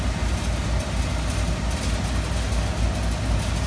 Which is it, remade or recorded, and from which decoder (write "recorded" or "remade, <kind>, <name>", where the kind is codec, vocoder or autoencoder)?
recorded